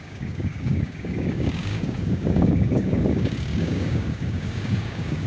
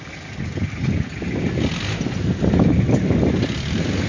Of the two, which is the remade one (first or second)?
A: first